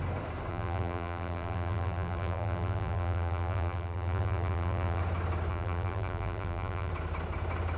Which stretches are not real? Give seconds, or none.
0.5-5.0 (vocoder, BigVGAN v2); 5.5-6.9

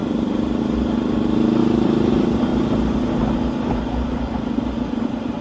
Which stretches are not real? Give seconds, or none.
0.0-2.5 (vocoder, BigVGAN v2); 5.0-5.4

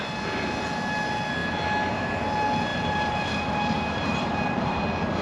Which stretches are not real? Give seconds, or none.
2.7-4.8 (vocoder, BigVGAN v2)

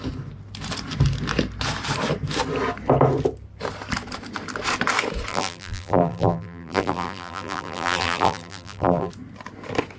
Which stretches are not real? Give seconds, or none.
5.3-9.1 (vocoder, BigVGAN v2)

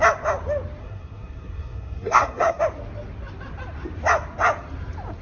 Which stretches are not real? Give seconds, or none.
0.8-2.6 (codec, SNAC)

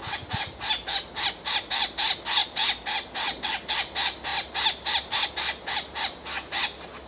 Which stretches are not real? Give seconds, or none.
none

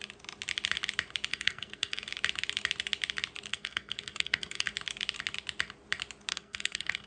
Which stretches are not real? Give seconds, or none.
1.3-2.1 (codec, SNAC); 3.5-4.7; 6.3-7.1